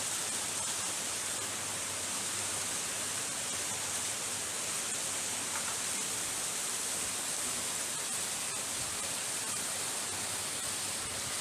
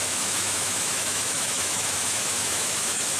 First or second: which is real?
first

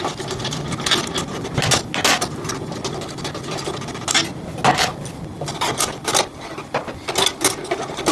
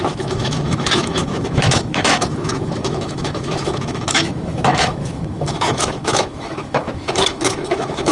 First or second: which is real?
first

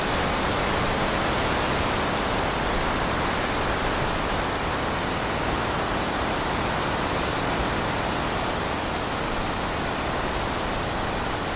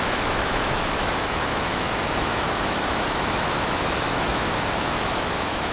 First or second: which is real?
first